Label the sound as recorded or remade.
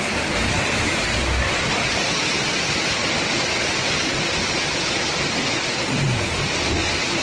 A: recorded